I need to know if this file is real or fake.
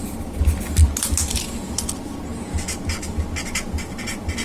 real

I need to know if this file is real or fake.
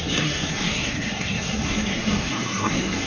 fake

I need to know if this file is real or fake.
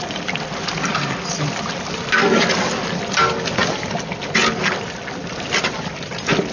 real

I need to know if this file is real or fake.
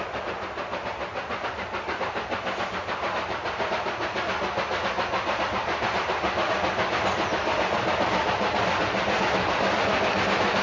real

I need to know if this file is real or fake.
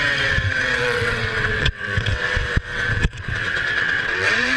fake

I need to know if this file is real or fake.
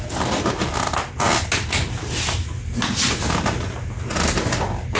real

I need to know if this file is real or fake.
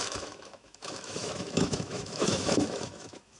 fake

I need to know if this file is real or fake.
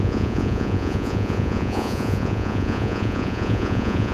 fake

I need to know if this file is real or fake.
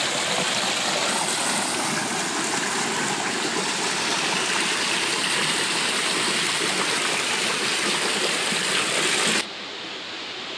real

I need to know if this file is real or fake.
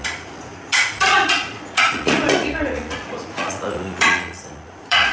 fake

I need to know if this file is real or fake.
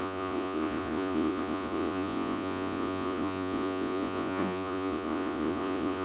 fake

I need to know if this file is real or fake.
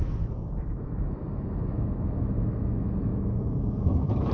fake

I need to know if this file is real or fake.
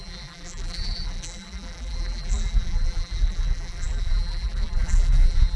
fake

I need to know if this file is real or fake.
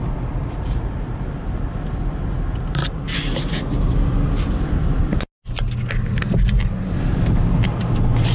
real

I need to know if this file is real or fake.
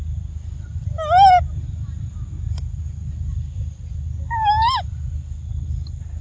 real